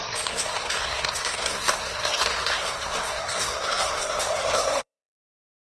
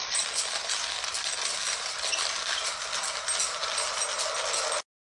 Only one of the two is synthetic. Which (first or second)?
first